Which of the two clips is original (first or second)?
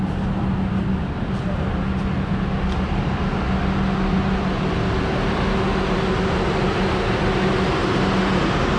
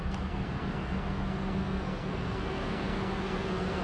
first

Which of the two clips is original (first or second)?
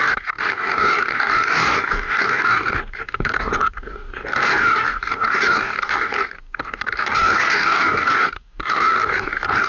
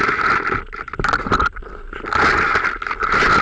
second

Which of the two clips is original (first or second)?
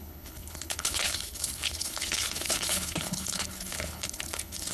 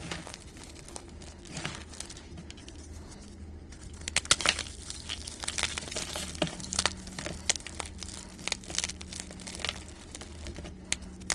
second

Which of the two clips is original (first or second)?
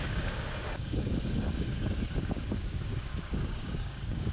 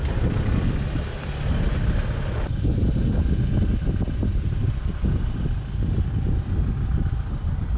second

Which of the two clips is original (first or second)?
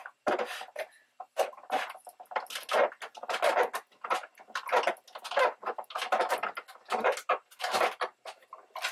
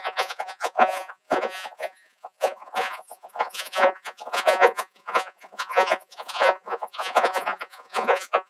first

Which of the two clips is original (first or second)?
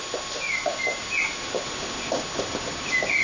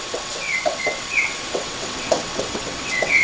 first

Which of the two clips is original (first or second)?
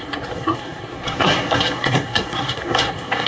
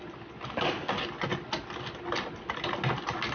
second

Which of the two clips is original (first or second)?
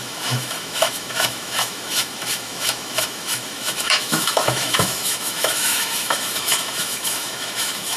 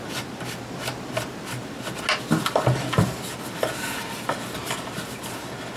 second